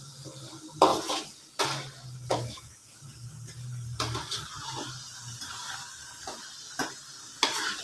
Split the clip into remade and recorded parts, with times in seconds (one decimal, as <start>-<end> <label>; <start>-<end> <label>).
0.0-2.3 recorded; 2.3-3.0 remade; 3.0-7.8 recorded